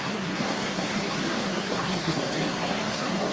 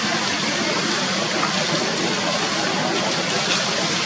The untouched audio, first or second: second